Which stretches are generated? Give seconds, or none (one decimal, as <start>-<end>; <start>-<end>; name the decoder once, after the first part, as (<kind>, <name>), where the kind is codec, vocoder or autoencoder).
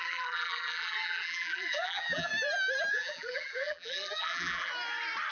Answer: 0.0-2.3 (vocoder, BigVGAN v2); 2.9-4.7